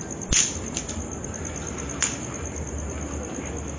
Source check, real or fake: real